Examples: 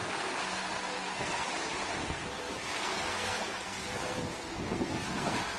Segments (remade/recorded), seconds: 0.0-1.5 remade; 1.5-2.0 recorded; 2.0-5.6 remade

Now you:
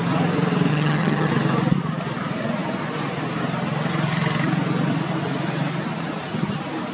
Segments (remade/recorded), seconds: 0.0-0.7 recorded; 0.7-1.3 remade; 1.3-6.9 recorded

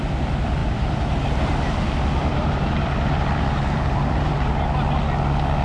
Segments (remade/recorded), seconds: 0.0-0.6 recorded; 0.6-1.4 remade; 1.4-2.3 recorded; 2.3-4.5 remade; 4.5-5.6 recorded

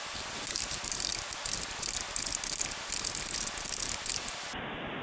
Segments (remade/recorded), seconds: 0.0-1.1 remade; 1.1-4.1 recorded; 4.1-5.0 remade

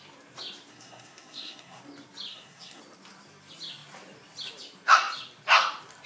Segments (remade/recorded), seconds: 0.0-0.7 recorded; 0.7-1.8 remade; 1.8-2.3 recorded; 2.3-2.8 remade; 2.8-6.1 recorded

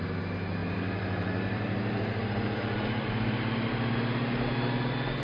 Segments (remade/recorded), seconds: 0.0-0.6 recorded; 0.6-3.7 remade; 3.7-5.2 recorded